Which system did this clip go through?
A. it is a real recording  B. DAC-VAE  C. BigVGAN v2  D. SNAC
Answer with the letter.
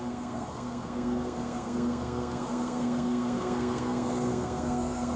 D